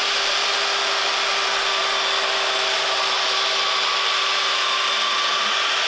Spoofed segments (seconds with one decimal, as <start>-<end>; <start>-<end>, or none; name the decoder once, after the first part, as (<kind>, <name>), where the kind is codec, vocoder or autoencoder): none